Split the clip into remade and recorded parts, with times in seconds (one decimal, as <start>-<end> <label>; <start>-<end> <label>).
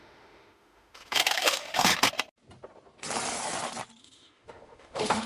0.0-1.9 remade; 1.9-4.0 recorded; 4.0-5.3 remade